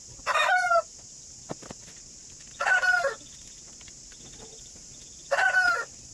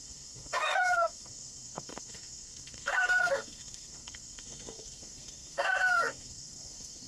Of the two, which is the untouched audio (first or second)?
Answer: first